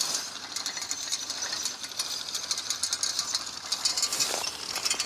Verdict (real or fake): real